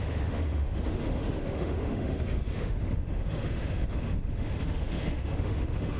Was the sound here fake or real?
fake